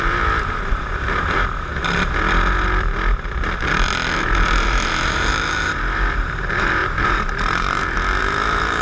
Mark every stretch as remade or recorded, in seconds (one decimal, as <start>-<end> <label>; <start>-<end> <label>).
0.0-1.7 remade; 1.7-4.2 recorded; 4.2-8.8 remade